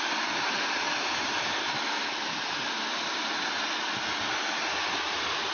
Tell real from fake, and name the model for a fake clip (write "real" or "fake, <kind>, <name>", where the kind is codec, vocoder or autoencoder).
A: real